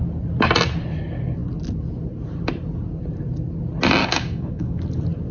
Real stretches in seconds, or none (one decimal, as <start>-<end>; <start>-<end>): 0.0-4.0; 4.8-5.3